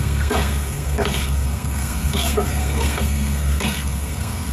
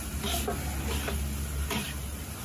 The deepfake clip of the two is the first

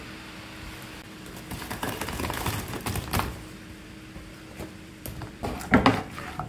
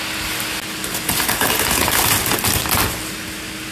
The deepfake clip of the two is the first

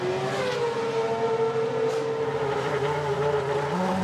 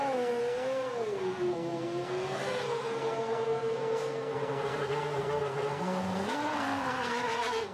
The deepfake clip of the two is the second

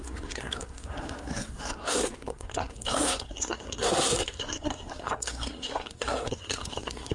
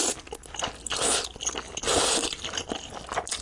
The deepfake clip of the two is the first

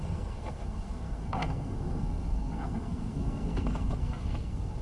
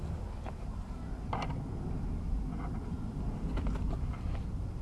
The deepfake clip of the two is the first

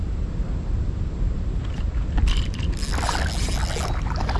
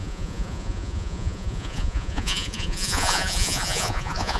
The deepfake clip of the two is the second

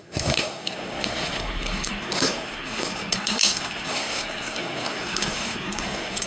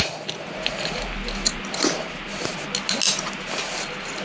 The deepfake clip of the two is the first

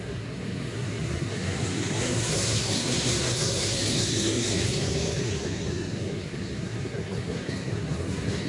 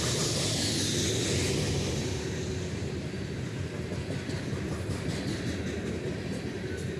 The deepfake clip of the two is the first